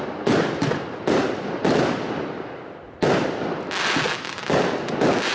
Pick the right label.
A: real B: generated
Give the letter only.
A